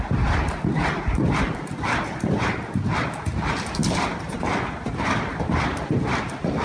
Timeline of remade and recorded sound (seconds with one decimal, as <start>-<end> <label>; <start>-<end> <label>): 0.0-6.6 recorded